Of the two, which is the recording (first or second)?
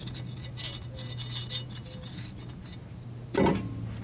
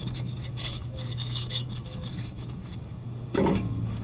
first